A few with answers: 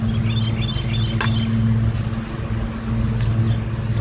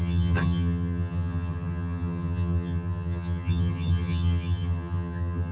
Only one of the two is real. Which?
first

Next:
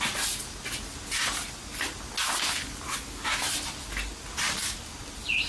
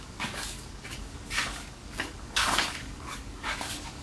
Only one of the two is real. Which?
first